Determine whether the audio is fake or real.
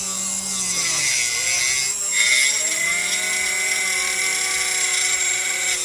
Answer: real